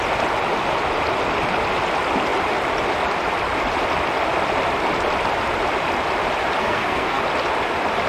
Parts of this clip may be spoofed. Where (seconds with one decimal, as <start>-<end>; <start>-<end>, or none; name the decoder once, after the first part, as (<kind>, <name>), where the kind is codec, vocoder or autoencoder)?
6.6-7.2 (codec, SNAC)